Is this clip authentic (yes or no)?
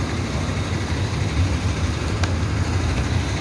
yes